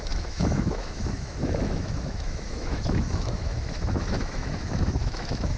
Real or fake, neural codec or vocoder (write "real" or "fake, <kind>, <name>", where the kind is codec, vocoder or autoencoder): fake, autoencoder, DAC-VAE